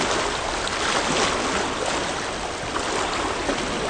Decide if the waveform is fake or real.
real